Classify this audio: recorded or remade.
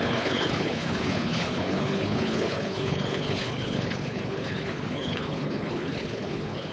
remade